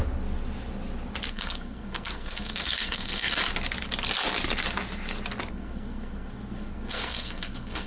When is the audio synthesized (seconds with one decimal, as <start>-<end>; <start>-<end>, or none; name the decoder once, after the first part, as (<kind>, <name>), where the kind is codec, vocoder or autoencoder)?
1.3-3.4 (codec, SNAC); 5.5-7.9